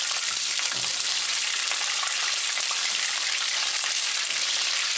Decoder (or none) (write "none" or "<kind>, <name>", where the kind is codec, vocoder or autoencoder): vocoder, BigVGAN v2